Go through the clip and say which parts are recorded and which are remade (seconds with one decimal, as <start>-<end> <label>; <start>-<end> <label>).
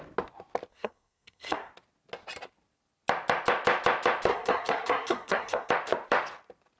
0.0-0.7 recorded; 0.7-1.7 remade; 1.7-4.3 recorded; 4.3-5.7 remade; 5.7-6.8 recorded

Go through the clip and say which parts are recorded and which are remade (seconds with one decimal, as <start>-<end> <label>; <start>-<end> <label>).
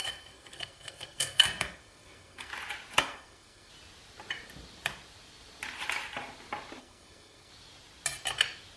0.0-2.5 remade; 2.5-3.0 recorded; 3.0-3.7 remade; 3.7-6.8 recorded; 6.8-7.5 remade; 7.5-8.8 recorded